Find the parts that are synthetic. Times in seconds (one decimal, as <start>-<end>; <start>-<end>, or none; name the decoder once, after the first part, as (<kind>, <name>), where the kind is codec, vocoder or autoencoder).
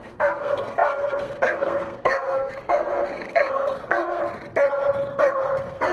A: 0.0-4.2 (codec, SNAC); 5.1-5.9